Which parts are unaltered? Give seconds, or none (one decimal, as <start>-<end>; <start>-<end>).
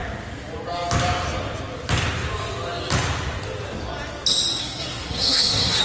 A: 0.0-4.6